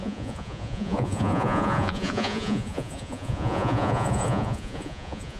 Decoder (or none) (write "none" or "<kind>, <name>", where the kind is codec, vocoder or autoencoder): vocoder, Vocos